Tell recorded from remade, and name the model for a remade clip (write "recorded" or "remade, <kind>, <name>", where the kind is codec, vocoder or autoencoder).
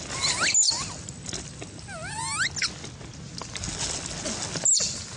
recorded